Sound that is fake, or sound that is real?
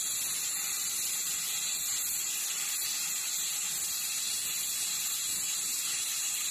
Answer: real